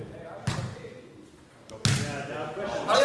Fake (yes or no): no